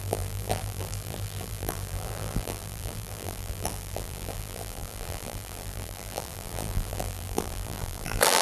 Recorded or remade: remade